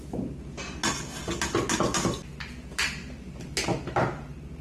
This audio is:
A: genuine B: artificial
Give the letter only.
A